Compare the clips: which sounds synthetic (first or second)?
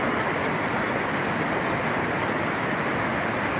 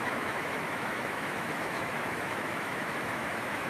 second